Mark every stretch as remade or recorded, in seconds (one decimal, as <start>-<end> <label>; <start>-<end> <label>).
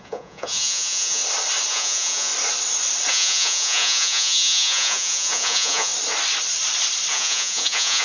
0.0-1.2 remade; 1.2-1.7 recorded; 1.7-2.3 remade; 2.3-3.1 recorded; 3.1-5.9 remade; 5.9-7.1 recorded; 7.1-8.0 remade